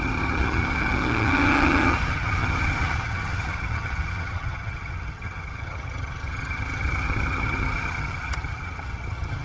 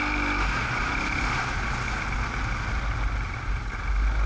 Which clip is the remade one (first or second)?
first